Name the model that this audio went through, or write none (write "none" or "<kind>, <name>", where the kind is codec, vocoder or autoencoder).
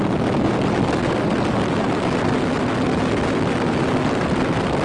none